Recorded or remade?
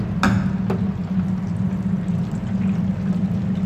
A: recorded